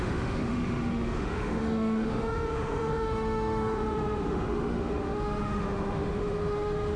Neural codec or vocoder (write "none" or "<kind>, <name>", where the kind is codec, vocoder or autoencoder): autoencoder, DAC-VAE